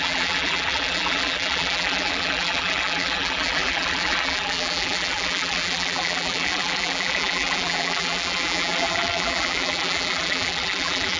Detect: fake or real fake